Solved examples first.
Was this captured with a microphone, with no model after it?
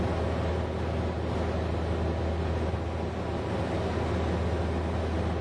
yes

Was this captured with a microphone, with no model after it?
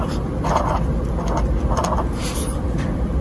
no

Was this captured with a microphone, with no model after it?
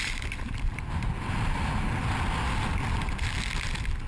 yes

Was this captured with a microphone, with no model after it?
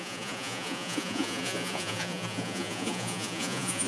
no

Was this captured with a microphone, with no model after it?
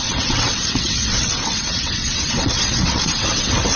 no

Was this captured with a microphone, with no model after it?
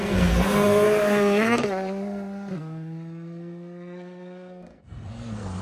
no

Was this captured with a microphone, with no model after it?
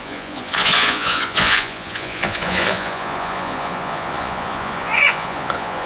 no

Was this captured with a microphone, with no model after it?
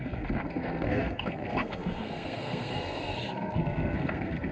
no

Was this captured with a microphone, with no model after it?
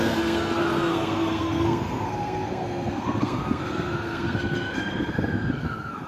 no